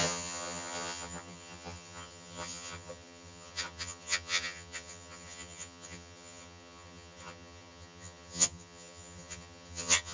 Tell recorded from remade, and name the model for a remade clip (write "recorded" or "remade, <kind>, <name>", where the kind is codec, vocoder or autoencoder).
remade, vocoder, HiFi-GAN